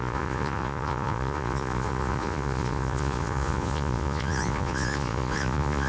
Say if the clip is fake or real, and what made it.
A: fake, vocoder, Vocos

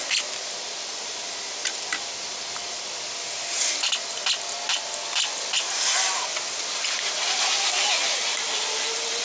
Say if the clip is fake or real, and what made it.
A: real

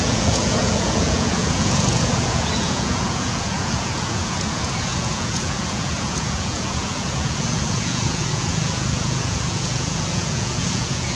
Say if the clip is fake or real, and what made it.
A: fake, vocoder, Vocos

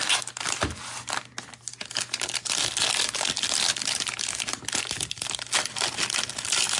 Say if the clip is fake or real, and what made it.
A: real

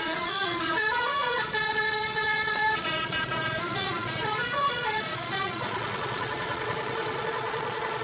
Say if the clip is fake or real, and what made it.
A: fake, vocoder, Vocos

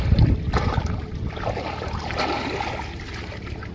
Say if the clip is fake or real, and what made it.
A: real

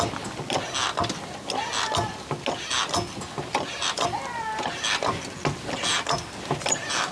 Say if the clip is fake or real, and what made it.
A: real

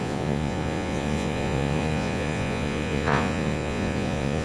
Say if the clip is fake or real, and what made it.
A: fake, vocoder, Vocos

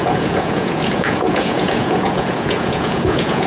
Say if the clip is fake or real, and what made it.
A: fake, vocoder, Vocos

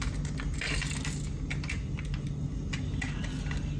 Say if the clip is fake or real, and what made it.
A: real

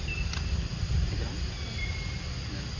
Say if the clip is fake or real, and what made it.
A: real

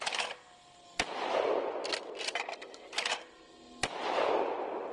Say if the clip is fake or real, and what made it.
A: real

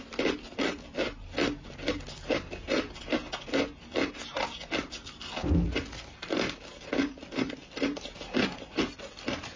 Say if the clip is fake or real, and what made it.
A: real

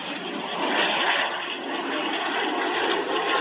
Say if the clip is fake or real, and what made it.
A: real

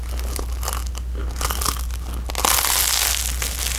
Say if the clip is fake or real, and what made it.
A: real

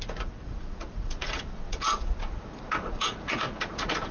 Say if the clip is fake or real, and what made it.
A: fake, vocoder, Vocos